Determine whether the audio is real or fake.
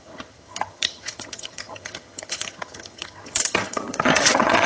fake